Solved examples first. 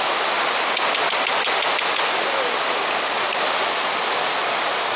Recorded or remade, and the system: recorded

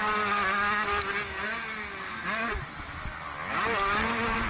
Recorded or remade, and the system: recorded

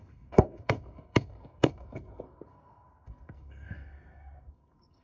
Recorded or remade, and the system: remade, codec, SNAC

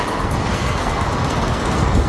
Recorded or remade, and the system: remade, codec, SNAC